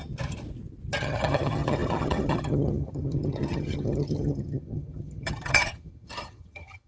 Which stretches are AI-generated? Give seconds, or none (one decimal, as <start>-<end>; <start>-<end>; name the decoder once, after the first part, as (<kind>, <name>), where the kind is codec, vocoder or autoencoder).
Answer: 1.0-6.9 (vocoder, HiFi-GAN)